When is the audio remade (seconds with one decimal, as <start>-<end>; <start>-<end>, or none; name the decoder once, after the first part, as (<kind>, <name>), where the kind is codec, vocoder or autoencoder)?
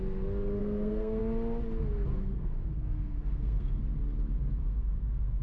0.6-1.2 (codec, SNAC); 2.1-3.8; 4.6-5.4